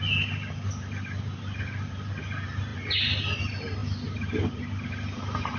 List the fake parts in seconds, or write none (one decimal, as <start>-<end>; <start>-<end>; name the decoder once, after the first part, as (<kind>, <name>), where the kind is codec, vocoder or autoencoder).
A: none